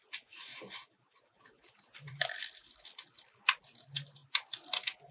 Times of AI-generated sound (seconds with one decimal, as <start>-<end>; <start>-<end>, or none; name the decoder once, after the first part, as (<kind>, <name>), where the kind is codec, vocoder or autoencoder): 0.5-3.6 (vocoder, BigVGAN v2)

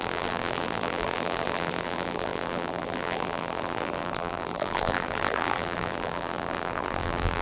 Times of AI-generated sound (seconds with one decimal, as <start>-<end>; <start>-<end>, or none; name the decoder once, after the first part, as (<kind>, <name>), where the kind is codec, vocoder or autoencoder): 0.0-7.4 (vocoder, BigVGAN v2)

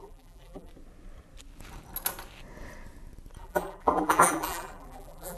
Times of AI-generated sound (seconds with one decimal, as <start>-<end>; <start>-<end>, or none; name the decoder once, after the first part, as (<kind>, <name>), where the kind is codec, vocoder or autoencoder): 0.0-0.7 (vocoder, BigVGAN v2); 3.4-5.4

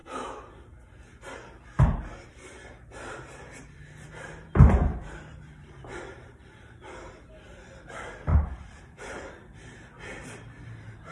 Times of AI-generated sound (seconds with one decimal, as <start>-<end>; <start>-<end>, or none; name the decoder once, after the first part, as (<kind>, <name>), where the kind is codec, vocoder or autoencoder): 4.9-6.8 (vocoder, BigVGAN v2); 8.3-9.3

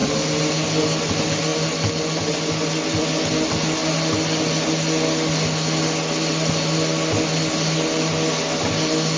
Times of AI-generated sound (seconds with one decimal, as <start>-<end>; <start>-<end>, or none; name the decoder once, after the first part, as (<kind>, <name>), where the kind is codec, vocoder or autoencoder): none

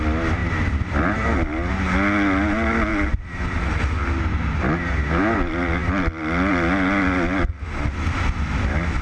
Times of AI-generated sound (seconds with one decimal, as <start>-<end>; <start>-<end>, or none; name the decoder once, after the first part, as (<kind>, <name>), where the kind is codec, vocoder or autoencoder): 0.4-1.7 (vocoder, BigVGAN v2); 2.9-3.7

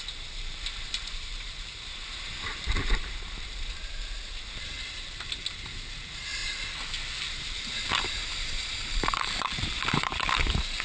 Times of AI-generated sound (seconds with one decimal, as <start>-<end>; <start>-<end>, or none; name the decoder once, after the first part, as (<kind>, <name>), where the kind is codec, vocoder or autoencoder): 0.0-6.4 (vocoder, BigVGAN v2); 7.2-10.8